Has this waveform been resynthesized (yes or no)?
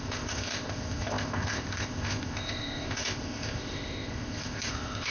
yes